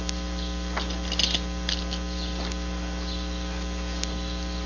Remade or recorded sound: recorded